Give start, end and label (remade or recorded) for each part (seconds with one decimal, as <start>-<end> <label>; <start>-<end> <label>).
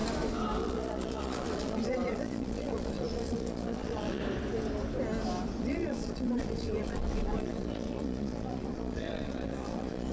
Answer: 0.0-0.6 recorded; 0.6-4.2 remade; 4.2-5.6 recorded; 5.6-10.1 remade